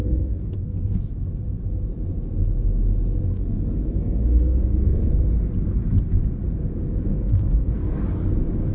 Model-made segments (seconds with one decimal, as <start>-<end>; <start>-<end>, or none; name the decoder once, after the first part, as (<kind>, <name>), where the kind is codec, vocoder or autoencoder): 0.0-1.0 (codec, SNAC); 3.3-5.1; 7.1-8.0